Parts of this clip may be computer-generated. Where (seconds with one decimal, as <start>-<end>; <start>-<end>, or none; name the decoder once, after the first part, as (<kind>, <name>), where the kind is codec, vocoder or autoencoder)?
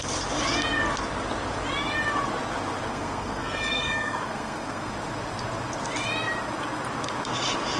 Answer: 2.9-4.9 (codec, SNAC)